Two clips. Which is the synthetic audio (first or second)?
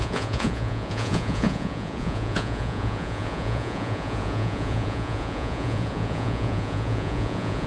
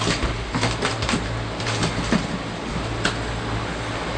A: first